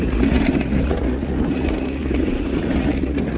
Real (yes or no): no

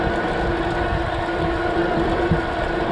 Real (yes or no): yes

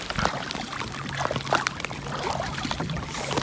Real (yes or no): yes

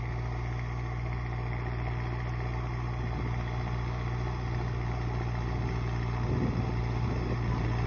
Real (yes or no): yes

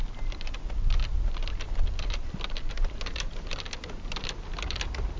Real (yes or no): yes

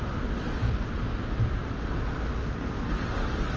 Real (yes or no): yes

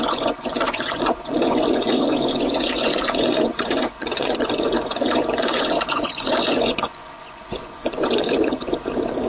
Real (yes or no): no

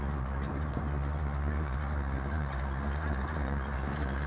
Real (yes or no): no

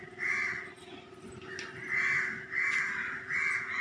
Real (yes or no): yes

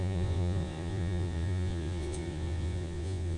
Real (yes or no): no